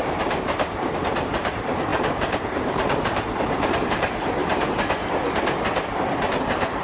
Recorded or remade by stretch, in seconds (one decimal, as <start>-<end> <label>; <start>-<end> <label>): 0.0-4.4 remade; 4.4-6.3 recorded; 6.3-6.8 remade